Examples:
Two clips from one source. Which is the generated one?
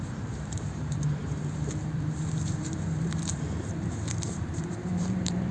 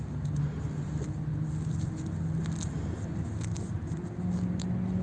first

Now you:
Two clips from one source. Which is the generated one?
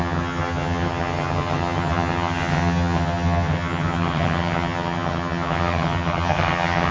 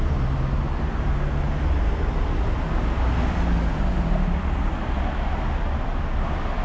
first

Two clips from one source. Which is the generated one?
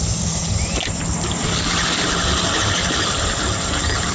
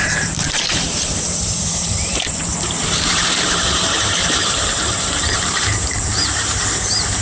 second